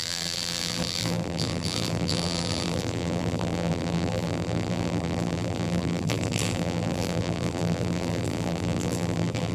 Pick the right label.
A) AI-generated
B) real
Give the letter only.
A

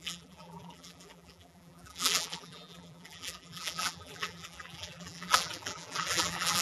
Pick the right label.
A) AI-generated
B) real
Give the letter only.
A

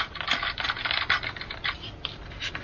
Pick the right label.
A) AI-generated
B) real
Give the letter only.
B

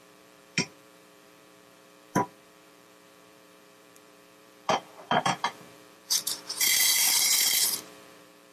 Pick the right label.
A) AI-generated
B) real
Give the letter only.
A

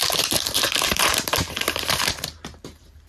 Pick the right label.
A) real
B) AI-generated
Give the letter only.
B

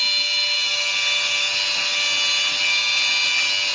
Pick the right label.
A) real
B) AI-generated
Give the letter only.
A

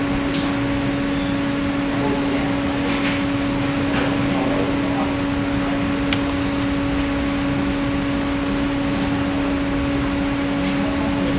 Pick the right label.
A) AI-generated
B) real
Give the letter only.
B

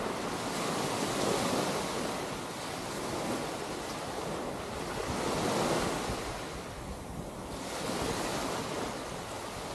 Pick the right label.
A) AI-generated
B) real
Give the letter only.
B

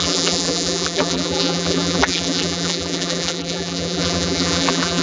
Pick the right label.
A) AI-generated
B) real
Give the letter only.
A